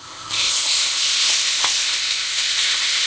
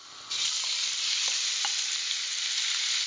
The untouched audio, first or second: second